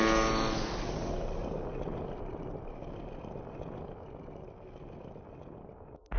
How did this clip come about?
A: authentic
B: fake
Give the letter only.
A